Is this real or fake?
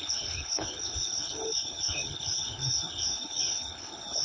fake